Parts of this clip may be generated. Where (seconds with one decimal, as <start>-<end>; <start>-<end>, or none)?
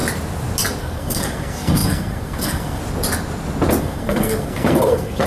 0.8-2.8; 3.8-5.3